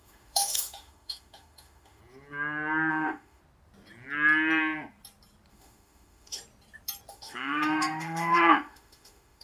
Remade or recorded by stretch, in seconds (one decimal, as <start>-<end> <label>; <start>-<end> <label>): 0.0-2.0 remade; 2.0-2.9 recorded; 2.9-3.4 remade; 3.4-5.5 recorded; 5.5-6.4 remade; 6.4-7.1 recorded; 7.1-9.4 remade